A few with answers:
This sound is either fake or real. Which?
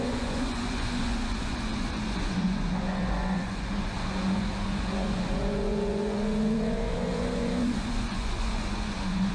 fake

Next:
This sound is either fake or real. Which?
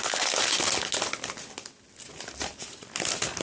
real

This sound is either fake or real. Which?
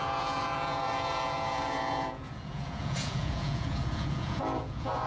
fake